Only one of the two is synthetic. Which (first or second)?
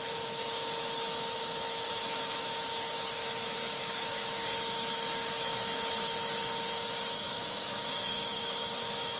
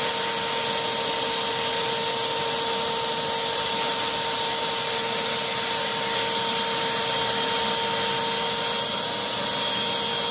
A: first